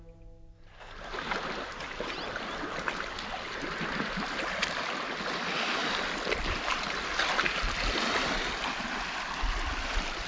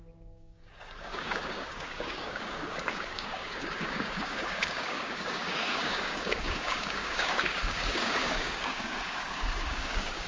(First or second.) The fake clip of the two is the second